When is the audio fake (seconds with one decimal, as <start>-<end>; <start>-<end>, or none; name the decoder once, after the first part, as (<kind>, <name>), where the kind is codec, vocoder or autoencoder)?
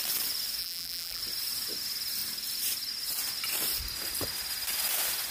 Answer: 0.6-1.2 (vocoder, BigVGAN v2)